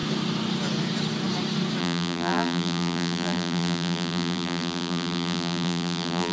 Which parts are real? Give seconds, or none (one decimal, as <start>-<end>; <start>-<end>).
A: 0.0-1.8